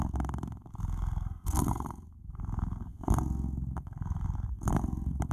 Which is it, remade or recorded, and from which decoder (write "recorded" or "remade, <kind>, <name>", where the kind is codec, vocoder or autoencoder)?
remade, codec, SNAC